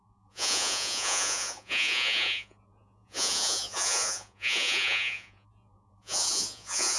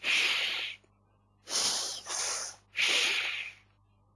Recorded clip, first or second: second